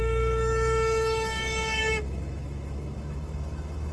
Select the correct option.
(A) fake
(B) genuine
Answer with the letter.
A